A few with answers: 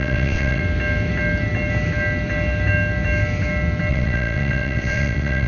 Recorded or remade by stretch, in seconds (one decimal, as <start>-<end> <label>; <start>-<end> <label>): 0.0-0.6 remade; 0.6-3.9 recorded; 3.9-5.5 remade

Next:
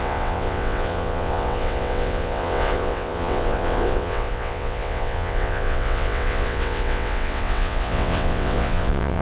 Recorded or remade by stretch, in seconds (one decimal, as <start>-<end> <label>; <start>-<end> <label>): 0.0-9.2 remade

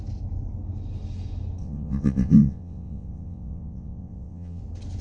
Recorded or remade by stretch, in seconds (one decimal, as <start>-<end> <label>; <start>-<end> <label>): 0.0-1.6 recorded; 1.6-4.6 remade; 4.6-5.0 recorded